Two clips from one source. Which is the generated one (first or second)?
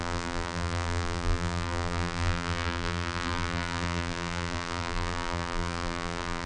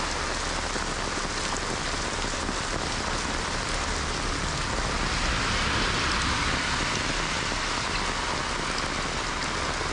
first